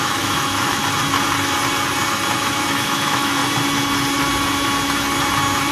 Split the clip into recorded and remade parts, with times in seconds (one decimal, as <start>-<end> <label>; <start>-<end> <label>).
0.0-0.8 remade; 0.8-2.4 recorded; 2.4-3.4 remade; 3.4-5.7 recorded